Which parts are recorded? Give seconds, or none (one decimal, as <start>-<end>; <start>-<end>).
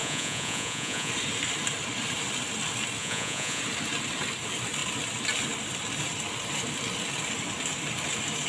1.1-3.0; 3.6-8.5